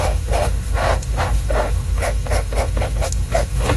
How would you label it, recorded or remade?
remade